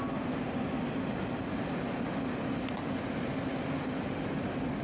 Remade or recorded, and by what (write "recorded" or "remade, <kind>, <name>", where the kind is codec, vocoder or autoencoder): recorded